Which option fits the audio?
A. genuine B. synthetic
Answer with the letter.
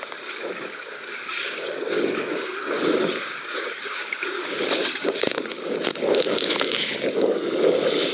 B